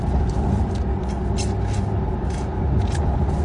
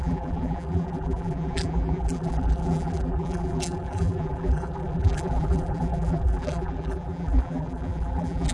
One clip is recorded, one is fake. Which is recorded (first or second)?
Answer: first